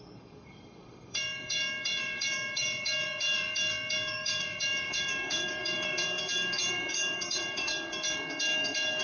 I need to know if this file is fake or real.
fake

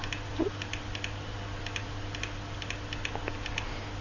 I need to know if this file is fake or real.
real